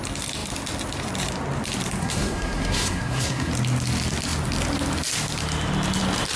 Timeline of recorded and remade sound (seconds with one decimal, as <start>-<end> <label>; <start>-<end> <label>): 0.0-2.0 recorded; 2.0-3.5 remade; 3.5-6.4 recorded